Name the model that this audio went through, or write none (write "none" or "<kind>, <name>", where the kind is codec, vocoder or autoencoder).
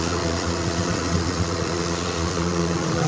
vocoder, Vocos